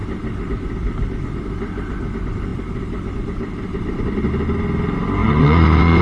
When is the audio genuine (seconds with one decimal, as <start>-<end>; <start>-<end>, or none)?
0.0-5.2